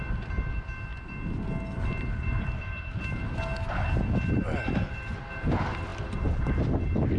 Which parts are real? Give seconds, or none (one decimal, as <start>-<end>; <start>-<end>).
0.0-7.2